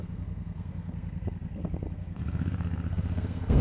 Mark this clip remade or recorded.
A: remade